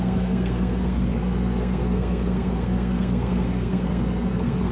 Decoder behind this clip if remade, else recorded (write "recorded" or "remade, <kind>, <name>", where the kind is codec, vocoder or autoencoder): remade, codec, SNAC